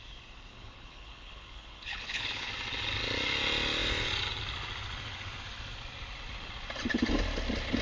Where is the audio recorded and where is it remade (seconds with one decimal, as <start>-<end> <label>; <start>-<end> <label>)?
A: 0.0-0.5 recorded; 0.5-2.5 remade; 2.5-7.8 recorded